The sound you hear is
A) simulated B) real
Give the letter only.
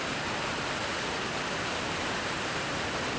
B